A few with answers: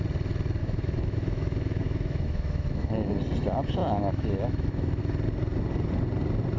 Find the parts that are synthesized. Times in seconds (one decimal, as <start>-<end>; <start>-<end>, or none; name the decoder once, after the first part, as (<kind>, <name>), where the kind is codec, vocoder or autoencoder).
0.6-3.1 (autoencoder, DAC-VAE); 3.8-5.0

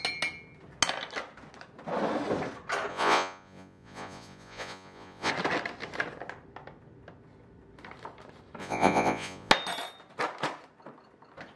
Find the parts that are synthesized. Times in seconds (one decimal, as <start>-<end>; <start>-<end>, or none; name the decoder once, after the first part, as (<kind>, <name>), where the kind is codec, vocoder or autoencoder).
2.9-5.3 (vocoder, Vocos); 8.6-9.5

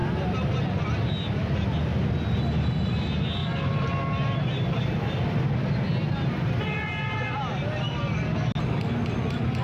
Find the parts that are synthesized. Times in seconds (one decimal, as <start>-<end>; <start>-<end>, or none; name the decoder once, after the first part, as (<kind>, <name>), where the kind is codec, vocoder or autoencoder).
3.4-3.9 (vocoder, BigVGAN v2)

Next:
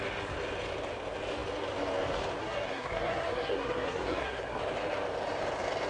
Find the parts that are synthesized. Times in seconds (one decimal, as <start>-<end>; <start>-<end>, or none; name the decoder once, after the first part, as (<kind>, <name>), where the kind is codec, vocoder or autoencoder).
2.4-4.6 (codec, SNAC)

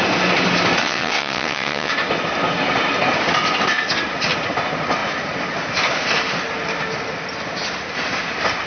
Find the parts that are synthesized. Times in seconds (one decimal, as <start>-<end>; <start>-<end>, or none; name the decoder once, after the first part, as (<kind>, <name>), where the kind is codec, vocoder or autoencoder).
0.8-1.9 (vocoder, WaveNeXt)

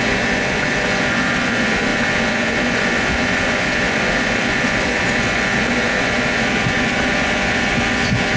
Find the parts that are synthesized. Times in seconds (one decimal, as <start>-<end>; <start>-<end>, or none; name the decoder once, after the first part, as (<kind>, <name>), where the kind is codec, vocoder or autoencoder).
0.0-8.4 (vocoder, Vocos)

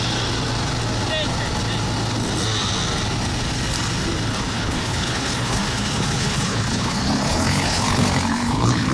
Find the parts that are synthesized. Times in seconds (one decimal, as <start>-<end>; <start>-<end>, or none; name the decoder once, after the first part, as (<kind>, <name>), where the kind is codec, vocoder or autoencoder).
4.3-8.9 (codec, HILCodec)

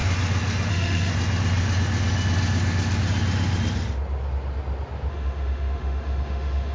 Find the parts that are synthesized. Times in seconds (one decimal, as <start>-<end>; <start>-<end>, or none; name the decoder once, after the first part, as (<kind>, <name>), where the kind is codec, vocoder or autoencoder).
0.7-1.1 (autoencoder, DAC-VAE); 5.1-6.7